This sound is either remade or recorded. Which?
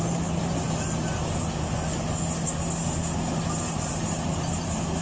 recorded